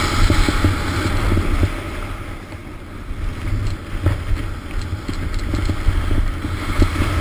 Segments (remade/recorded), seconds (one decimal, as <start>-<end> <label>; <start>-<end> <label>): 0.0-7.2 recorded